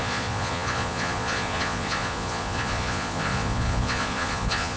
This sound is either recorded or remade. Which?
remade